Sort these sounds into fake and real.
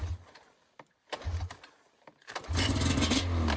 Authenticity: real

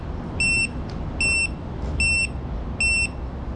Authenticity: real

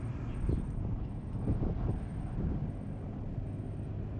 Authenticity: real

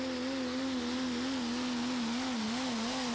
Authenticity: real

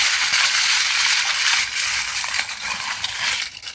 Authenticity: real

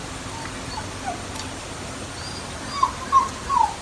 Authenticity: real